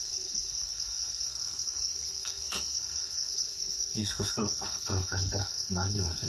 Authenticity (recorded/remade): remade